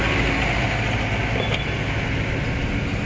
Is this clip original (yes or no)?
yes